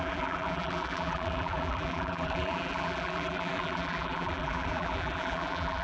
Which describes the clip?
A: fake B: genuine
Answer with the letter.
A